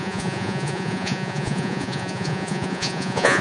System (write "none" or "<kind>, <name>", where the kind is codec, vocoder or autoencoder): vocoder, Vocos